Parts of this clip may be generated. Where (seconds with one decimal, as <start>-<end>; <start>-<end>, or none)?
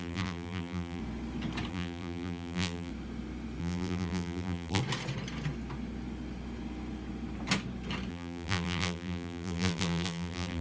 0.0-1.0; 1.7-2.9; 3.6-4.8; 8.1-10.6